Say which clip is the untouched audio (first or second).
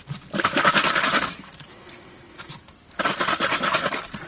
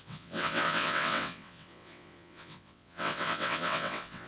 first